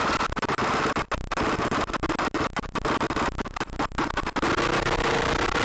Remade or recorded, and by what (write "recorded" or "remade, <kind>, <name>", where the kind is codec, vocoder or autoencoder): recorded